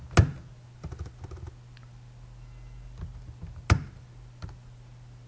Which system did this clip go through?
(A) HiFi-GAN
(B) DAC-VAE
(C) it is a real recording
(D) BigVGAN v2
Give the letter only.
C